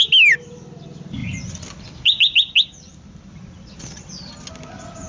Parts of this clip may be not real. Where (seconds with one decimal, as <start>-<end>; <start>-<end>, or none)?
none